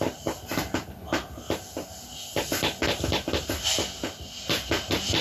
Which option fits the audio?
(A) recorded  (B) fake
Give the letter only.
A